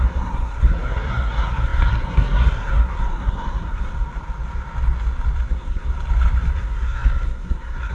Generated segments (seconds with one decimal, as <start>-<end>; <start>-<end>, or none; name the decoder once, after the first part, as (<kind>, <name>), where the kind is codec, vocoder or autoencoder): 0.0-3.9 (codec, SNAC); 5.5-5.9; 6.5-7.9